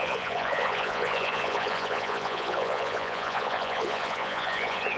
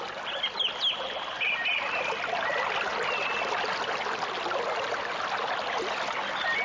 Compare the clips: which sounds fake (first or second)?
first